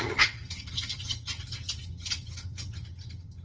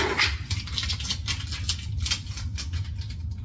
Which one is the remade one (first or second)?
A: first